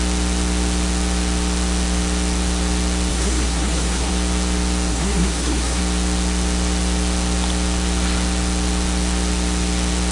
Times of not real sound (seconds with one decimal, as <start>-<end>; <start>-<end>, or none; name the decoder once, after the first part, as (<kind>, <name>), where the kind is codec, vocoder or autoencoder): 3.1-4.1 (codec, SNAC); 4.9-5.8